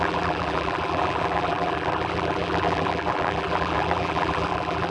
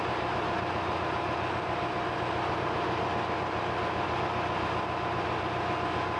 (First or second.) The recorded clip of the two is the second